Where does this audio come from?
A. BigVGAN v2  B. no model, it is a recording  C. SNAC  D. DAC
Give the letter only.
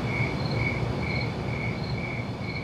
B